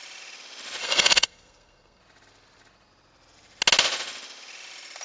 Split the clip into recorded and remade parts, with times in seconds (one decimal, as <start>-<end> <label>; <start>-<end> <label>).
0.0-0.8 recorded; 0.8-2.0 remade; 2.0-5.0 recorded